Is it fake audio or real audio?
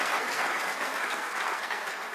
fake